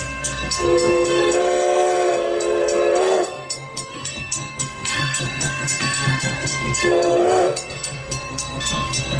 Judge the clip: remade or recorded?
remade